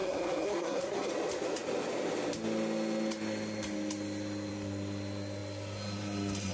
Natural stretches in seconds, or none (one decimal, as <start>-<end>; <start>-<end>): 1.1-6.5